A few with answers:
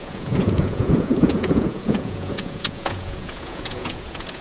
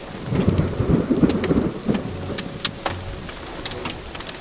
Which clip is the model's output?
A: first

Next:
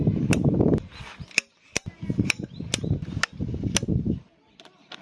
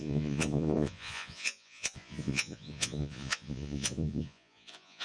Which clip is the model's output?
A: second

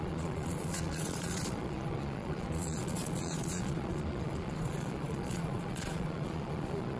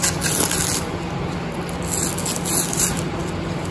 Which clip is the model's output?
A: first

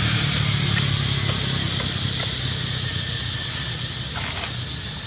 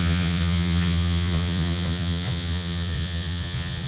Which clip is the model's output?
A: second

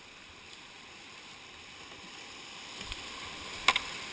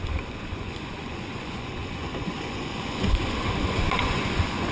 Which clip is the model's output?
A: second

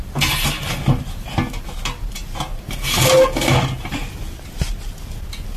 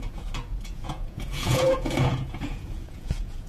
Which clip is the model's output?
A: second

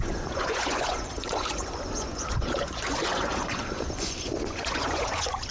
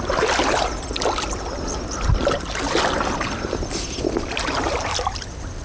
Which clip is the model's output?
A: first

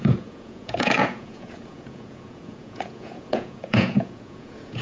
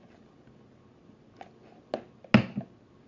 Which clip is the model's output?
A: first